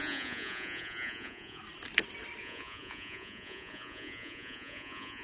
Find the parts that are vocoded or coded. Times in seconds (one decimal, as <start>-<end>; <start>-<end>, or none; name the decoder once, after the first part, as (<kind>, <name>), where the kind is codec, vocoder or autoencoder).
0.0-1.6 (vocoder, Vocos); 2.4-5.2